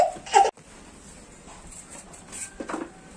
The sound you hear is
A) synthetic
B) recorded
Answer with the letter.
B